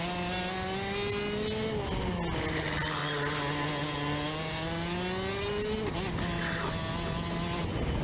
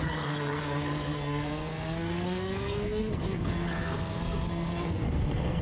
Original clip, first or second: first